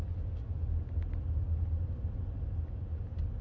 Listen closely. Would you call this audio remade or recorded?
recorded